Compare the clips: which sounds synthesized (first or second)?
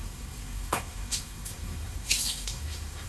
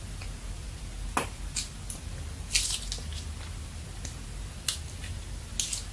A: first